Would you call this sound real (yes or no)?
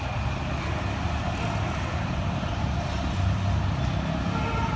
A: yes